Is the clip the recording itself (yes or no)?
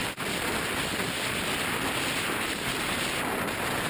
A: no